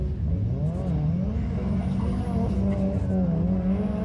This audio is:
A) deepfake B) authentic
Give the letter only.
B